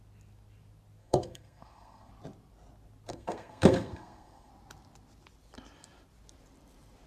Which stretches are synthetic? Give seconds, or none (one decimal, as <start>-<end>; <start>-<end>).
1.0-2.1; 3.1-4.5